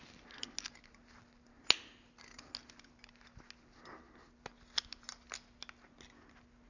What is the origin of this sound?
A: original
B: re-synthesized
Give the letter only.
A